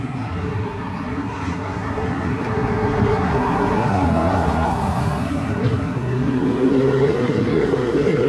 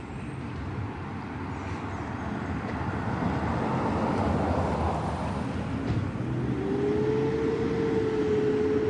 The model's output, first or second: first